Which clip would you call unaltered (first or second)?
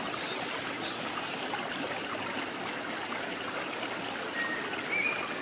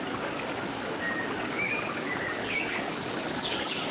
first